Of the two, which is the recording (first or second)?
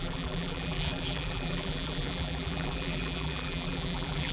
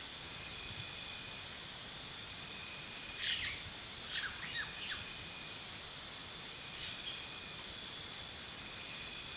second